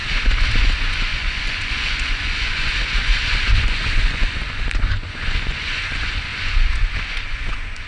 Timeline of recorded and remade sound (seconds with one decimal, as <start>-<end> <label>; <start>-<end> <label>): 0.0-7.9 remade